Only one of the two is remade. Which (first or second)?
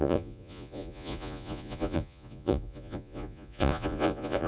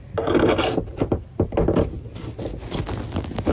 first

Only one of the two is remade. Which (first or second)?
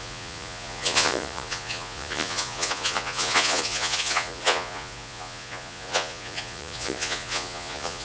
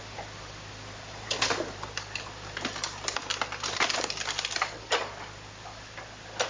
first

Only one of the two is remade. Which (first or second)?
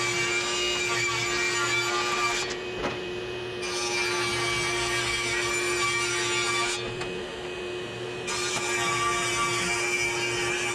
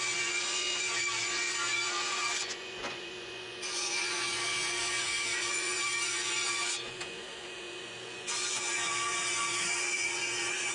second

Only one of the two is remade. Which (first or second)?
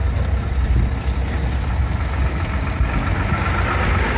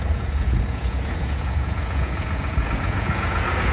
second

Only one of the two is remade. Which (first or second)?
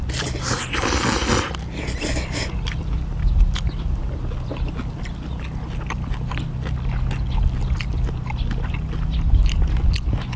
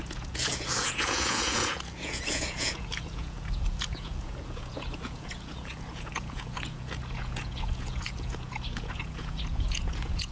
second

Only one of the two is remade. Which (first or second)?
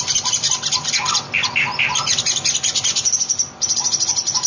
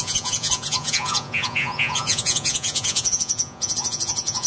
second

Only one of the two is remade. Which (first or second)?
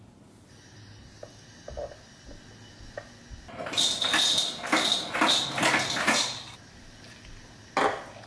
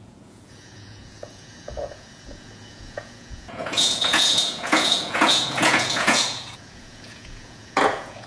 second